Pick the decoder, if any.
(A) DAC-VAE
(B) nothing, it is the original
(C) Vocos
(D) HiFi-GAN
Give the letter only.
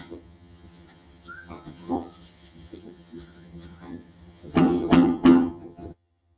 D